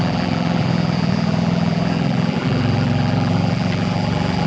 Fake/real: fake